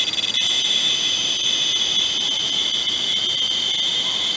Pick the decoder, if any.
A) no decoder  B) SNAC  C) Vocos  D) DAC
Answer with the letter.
A